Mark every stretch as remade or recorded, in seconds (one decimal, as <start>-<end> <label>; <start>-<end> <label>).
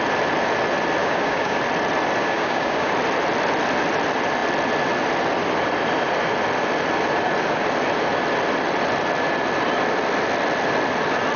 0.0-1.0 recorded; 1.0-1.6 remade; 1.6-2.2 recorded; 2.2-2.9 remade; 2.9-11.4 recorded